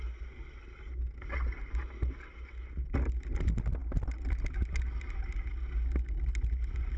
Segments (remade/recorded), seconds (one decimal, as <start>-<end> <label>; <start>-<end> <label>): 0.0-7.0 recorded